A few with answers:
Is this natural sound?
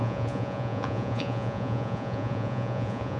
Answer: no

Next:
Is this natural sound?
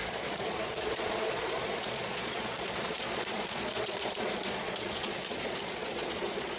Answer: no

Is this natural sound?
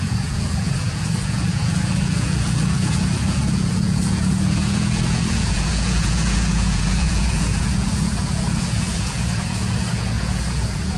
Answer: no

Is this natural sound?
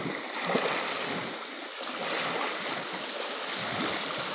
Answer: yes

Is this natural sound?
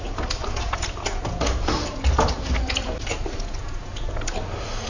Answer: yes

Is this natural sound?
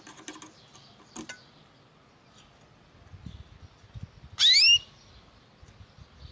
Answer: yes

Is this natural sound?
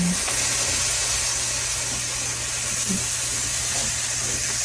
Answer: yes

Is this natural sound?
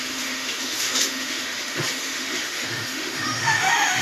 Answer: no